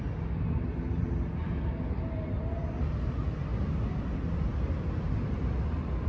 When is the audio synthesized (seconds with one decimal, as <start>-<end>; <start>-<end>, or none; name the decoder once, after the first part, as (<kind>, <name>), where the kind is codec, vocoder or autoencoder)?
none